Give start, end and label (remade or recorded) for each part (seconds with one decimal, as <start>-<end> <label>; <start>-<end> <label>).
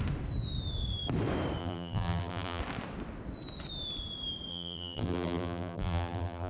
0.0-1.6 recorded; 1.6-2.6 remade; 2.6-4.5 recorded; 4.5-6.5 remade